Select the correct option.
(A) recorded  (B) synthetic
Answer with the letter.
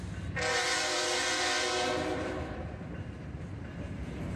B